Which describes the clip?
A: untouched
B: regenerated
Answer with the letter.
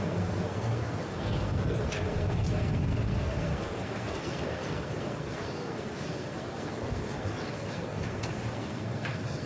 B